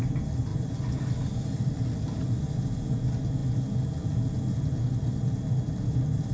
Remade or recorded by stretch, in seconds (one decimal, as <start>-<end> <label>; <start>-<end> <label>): 0.0-0.5 recorded; 0.5-1.0 remade; 1.0-6.3 recorded